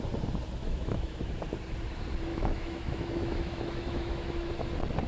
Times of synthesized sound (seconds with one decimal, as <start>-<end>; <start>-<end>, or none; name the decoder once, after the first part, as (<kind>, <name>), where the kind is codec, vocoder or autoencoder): 0.6-1.3 (autoencoder, DAC-VAE); 2.3-4.5